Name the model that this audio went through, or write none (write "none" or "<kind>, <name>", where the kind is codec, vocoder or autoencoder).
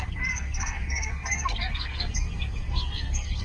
codec, SNAC